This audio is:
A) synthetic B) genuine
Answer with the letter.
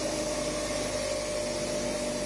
B